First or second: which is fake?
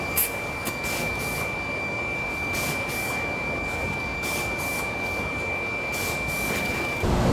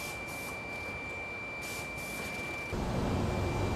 first